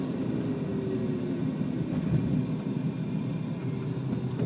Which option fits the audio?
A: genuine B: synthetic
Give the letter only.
A